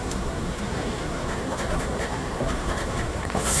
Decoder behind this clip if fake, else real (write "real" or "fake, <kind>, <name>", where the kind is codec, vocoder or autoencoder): fake, codec, SNAC